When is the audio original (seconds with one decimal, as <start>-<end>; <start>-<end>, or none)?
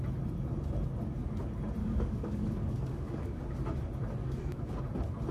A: 0.0-1.8; 3.4-4.2; 4.8-5.3